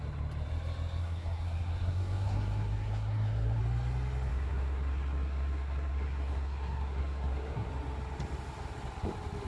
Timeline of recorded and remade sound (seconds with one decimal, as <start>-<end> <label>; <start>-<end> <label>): 0.0-1.0 recorded; 1.0-3.6 remade; 3.6-4.3 recorded; 4.3-7.7 remade; 7.7-9.5 recorded